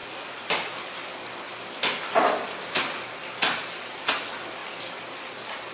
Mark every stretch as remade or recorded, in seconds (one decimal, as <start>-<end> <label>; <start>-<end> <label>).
0.0-5.7 recorded

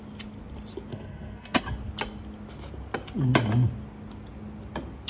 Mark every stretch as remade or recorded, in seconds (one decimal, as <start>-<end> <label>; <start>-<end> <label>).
0.0-0.9 recorded; 0.9-1.6 remade; 1.6-5.1 recorded

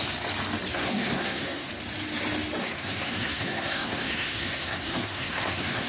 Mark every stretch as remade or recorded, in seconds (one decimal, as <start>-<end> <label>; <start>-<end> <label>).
0.0-0.7 recorded; 0.7-1.7 remade; 1.7-2.6 recorded; 2.6-5.9 remade